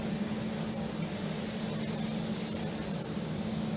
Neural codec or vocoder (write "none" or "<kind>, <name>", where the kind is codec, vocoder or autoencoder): none